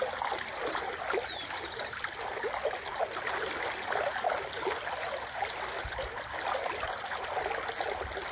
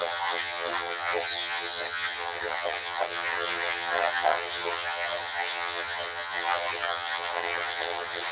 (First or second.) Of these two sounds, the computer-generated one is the second